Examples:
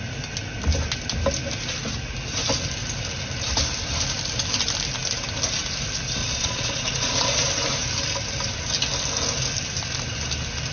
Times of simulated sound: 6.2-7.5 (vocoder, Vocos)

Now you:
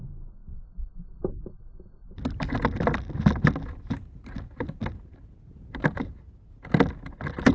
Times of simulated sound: none